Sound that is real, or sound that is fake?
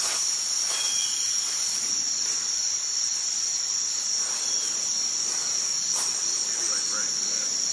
real